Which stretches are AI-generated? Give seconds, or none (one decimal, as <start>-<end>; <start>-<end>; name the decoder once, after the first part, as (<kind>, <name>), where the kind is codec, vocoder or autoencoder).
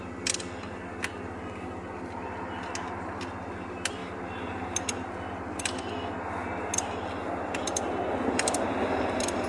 none